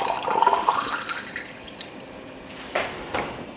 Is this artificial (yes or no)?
no